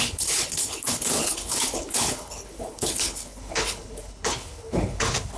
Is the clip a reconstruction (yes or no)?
yes